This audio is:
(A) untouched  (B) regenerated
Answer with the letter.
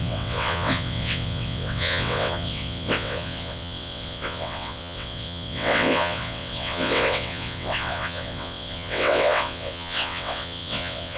B